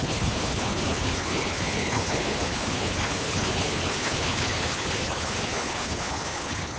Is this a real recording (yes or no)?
no